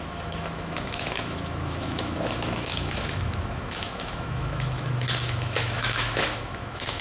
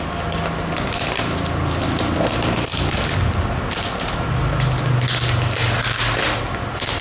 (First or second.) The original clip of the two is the second